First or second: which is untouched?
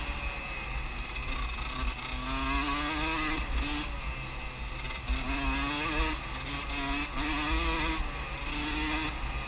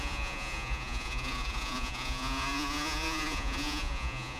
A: first